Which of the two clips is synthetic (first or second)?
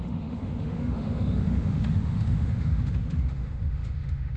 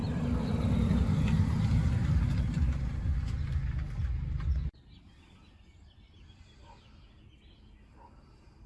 first